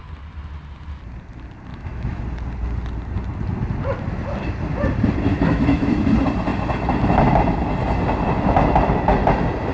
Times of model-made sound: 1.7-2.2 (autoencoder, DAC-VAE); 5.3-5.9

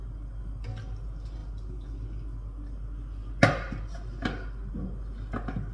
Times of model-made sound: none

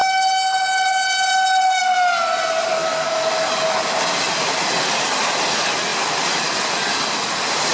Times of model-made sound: 2.8-3.3 (autoencoder, DAC-VAE)

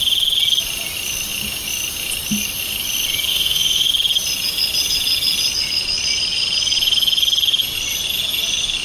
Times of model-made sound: 3.3-3.9 (autoencoder, DAC-VAE)

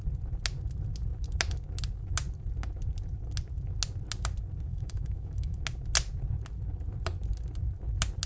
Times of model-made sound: 4.7-5.6 (autoencoder, DAC-VAE)